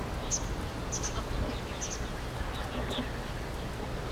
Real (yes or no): yes